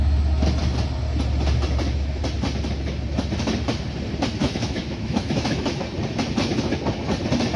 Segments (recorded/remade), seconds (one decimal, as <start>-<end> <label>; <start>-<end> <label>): 0.0-4.4 recorded; 4.4-5.8 remade; 5.8-7.6 recorded